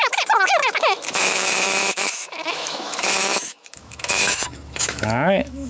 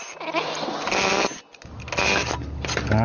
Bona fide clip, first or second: second